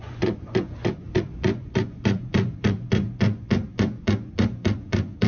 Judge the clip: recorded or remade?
remade